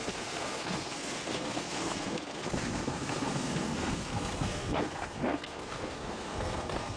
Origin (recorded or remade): remade